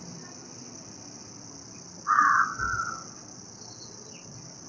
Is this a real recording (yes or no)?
yes